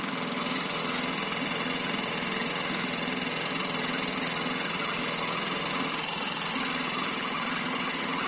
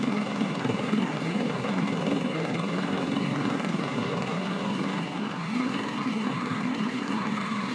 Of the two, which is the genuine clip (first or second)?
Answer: first